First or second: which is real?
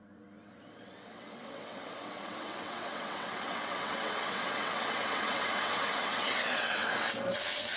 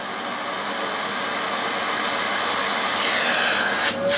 second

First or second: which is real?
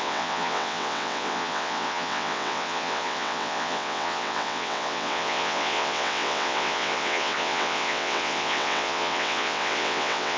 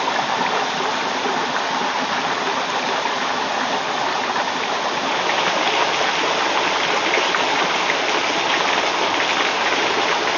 second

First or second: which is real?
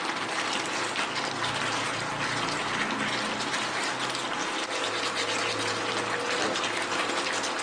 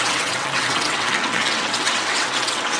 first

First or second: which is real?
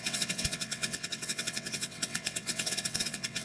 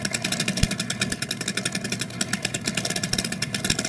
second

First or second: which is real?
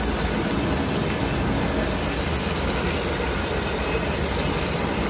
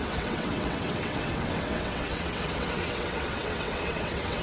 first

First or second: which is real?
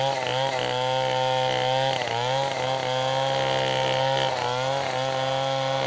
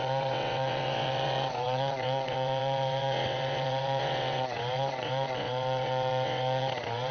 first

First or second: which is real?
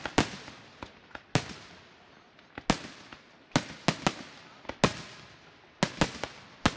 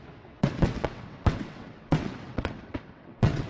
first